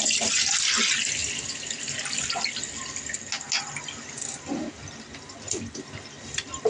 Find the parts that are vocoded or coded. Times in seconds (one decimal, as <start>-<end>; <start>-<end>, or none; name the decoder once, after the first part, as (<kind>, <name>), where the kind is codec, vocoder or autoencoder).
none